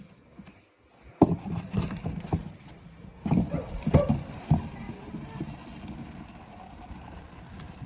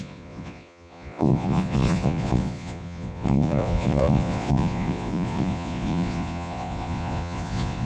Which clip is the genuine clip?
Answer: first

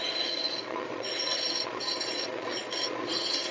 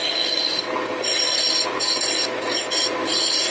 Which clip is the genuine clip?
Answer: second